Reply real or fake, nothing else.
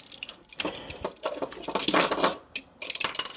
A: real